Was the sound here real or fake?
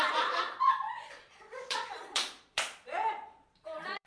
fake